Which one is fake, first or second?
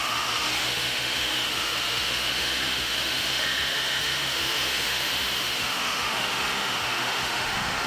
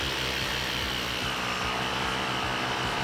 first